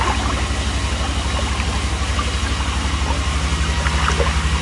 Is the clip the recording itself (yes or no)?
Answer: yes